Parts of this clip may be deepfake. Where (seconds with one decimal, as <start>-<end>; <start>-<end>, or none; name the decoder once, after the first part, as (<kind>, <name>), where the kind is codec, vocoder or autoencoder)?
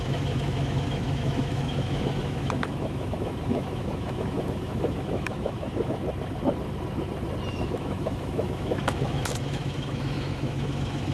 0.0-6.0 (autoencoder, DAC-VAE); 7.5-11.1